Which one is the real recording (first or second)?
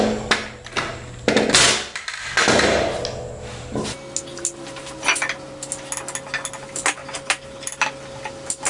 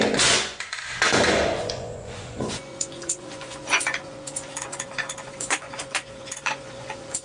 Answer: first